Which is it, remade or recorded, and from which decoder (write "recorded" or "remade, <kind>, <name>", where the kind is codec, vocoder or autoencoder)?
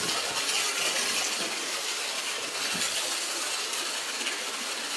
recorded